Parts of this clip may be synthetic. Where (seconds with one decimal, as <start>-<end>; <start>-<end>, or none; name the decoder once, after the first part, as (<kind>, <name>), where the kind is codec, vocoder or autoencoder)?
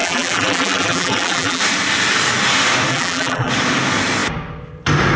0.0-1.6 (vocoder, BigVGAN v2); 2.9-3.5